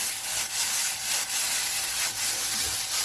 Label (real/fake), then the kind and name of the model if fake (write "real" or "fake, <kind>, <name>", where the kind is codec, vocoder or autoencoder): real